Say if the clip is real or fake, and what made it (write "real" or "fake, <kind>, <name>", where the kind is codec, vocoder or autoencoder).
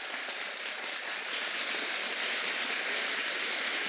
real